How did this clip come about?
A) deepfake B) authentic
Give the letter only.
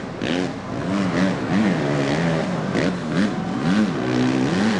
B